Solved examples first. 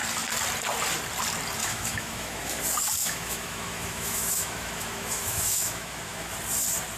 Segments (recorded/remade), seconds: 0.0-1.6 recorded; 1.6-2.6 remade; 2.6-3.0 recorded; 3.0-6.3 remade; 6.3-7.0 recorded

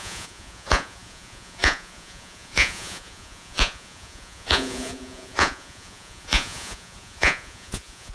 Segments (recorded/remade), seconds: 0.0-8.1 remade

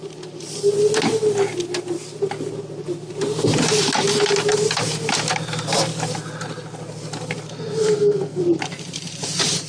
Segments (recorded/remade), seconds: 0.0-7.8 recorded; 7.8-8.4 remade; 8.4-9.7 recorded

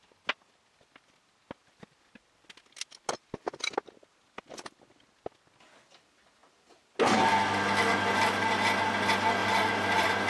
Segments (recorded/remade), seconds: 0.0-9.4 recorded; 9.4-10.3 remade

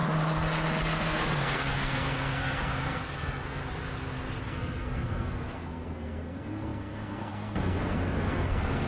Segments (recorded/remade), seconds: 0.0-0.8 recorded; 0.8-3.6 remade; 3.6-4.4 recorded; 4.4-8.9 remade

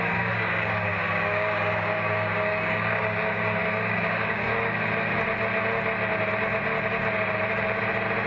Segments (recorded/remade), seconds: 0.0-4.5 remade; 4.5-8.3 recorded

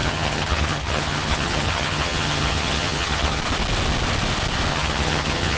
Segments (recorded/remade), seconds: 0.0-3.4 remade; 3.4-4.7 recorded; 4.7-5.6 remade

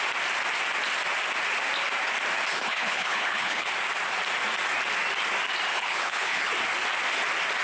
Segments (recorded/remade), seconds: 0.0-2.5 recorded; 2.5-3.7 remade; 3.7-5.7 recorded; 5.7-6.5 remade; 6.5-7.6 recorded